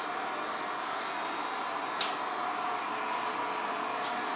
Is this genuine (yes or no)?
yes